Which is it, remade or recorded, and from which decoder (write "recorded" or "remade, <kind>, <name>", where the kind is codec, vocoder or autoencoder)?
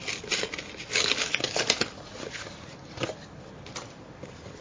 recorded